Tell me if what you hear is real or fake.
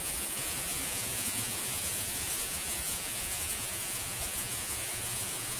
fake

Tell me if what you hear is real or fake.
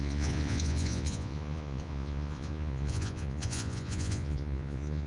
fake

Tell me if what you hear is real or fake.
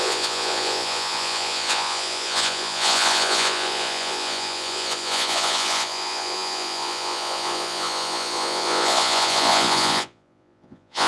fake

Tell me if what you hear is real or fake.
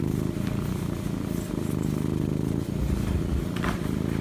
real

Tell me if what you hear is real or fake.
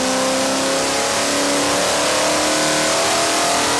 real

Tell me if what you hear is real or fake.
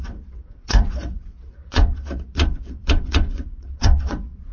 fake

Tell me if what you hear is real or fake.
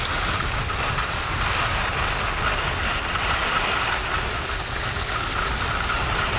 real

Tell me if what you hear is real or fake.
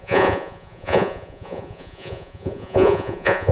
fake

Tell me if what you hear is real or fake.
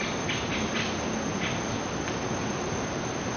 real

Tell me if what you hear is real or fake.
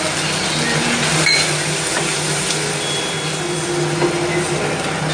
real